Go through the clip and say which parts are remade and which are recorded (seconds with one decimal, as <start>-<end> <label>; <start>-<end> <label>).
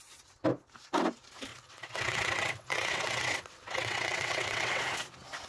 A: 0.0-1.5 recorded; 1.5-4.8 remade; 4.8-5.5 recorded